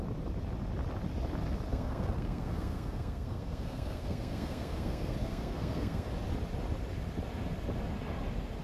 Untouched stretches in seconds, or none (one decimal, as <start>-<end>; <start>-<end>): 0.0-1.7; 6.1-8.6